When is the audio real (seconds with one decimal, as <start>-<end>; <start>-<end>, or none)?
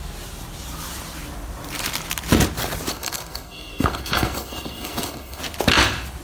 0.0-2.9; 5.4-6.2